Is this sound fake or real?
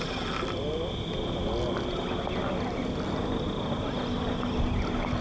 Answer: real